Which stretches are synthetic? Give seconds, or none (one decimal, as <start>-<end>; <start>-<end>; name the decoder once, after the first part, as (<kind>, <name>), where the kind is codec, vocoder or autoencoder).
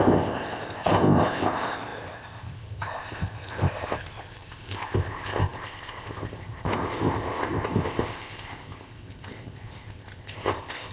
0.0-10.9 (codec, ZipCodec)